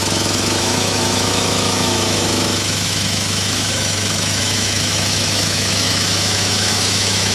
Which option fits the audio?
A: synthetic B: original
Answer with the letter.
A